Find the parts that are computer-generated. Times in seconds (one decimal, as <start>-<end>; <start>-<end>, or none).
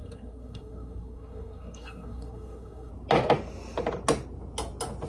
0.0-2.9